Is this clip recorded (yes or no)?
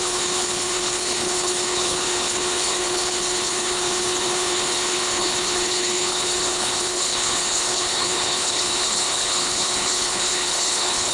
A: no